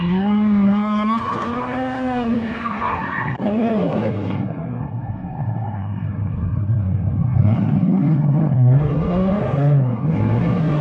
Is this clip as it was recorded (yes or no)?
no